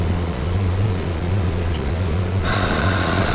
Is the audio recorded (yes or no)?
no